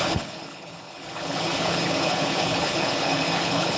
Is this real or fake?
fake